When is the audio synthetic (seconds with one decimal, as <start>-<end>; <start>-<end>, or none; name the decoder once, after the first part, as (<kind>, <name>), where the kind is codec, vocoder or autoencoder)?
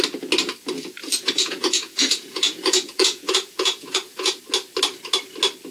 1.0-4.4 (vocoder, Vocos)